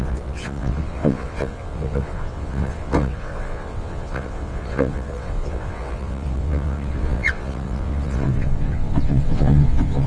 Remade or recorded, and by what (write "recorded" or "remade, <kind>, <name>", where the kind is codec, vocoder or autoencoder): remade, vocoder, WaveNeXt